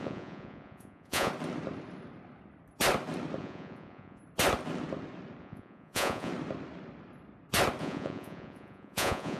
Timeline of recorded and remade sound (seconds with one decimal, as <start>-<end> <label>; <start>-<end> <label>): 0.0-1.3 remade; 1.3-3.4 recorded; 3.4-4.2 remade; 4.2-5.4 recorded; 5.4-6.3 remade; 6.3-7.8 recorded; 7.8-9.4 remade